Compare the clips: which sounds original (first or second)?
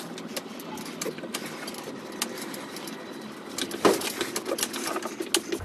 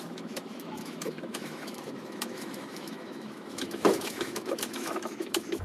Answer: first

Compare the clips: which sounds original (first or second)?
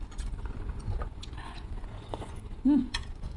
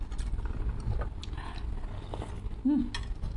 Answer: second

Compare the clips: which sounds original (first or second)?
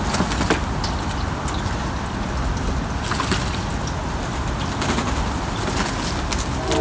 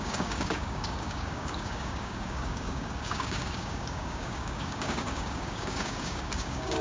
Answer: first